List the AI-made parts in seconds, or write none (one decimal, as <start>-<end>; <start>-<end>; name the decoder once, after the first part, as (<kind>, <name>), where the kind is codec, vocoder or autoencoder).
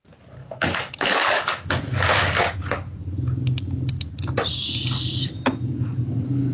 0.4-1.7 (codec, DAC)